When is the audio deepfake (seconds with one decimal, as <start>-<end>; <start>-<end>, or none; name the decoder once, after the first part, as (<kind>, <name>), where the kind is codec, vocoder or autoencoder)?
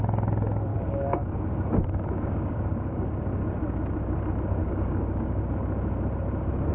0.7-1.4 (codec, DAC); 1.8-3.1; 4.6-5.4